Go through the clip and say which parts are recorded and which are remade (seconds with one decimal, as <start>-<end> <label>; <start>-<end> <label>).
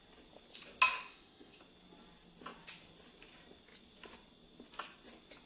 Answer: 0.0-0.9 recorded; 0.9-1.6 remade; 1.6-5.5 recorded